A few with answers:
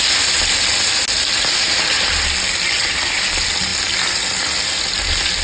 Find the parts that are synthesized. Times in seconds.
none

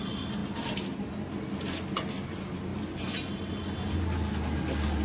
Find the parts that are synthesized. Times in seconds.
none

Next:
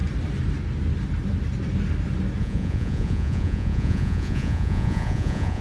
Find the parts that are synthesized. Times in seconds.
2.4-5.6

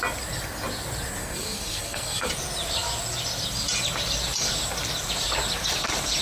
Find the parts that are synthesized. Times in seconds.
1.2-2.3